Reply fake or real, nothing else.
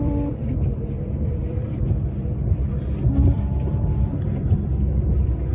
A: fake